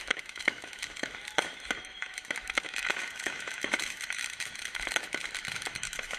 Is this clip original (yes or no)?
no